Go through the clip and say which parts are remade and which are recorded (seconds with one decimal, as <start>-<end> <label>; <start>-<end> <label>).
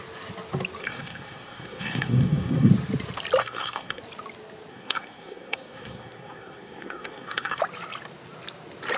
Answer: 0.0-0.8 recorded; 0.8-2.7 remade; 2.7-3.4 recorded; 3.4-4.0 remade; 4.0-4.7 recorded; 4.7-7.6 remade; 7.6-9.0 recorded